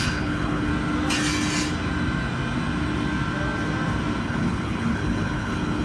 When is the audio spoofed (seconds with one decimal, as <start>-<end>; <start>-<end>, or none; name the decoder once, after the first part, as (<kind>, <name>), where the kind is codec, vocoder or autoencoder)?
0.0-0.7 (codec, HILCodec); 4.2-5.8